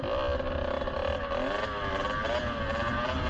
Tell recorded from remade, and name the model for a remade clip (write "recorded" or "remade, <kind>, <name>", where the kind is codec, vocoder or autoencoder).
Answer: recorded